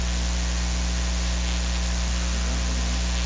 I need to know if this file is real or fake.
real